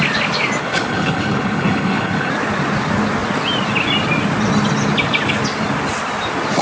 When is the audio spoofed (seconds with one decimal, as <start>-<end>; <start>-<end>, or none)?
0.6-2.3